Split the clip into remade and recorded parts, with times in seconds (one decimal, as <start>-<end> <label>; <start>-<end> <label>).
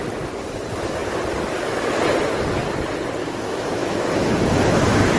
0.0-3.2 recorded; 3.2-5.2 remade